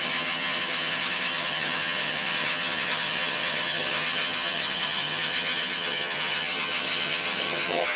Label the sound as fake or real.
fake